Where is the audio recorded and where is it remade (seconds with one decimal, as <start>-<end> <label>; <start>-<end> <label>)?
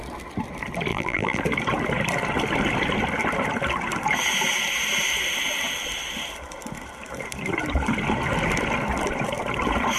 0.0-0.9 recorded; 0.9-1.4 remade; 1.4-10.0 recorded